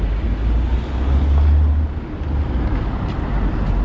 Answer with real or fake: real